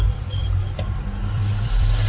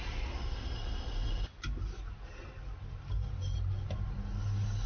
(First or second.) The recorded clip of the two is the second